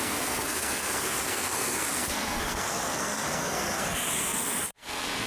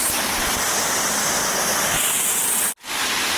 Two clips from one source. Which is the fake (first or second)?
first